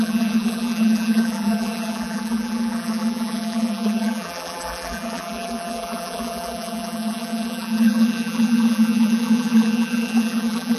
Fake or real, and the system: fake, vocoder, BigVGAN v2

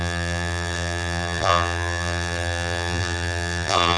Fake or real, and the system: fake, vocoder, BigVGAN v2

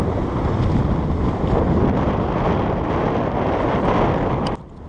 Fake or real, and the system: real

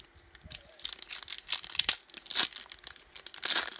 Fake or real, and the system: real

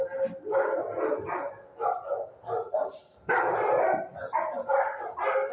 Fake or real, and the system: fake, vocoder, BigVGAN v2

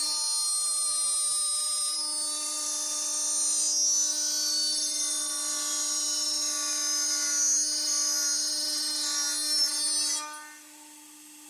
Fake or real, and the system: real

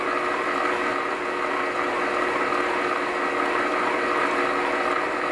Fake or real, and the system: real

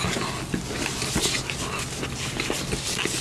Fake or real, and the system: real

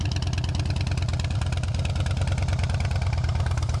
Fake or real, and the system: real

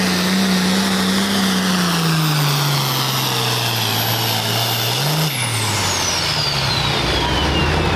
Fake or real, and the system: real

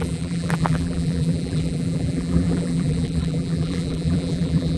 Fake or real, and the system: fake, vocoder, BigVGAN v2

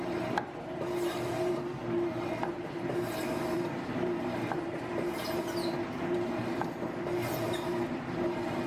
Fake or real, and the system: fake, vocoder, BigVGAN v2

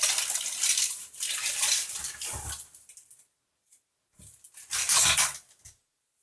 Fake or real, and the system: real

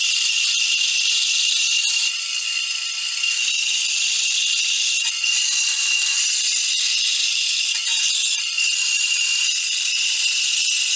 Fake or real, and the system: fake, vocoder, BigVGAN v2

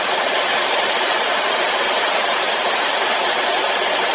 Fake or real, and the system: fake, vocoder, BigVGAN v2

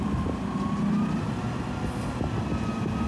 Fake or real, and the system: real